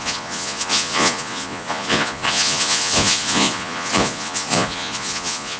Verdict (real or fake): fake